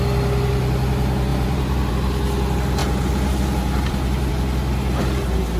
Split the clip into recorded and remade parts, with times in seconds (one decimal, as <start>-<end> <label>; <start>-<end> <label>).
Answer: 0.0-1.3 recorded; 1.3-1.9 remade; 1.9-2.8 recorded; 2.8-4.3 remade; 4.3-5.6 recorded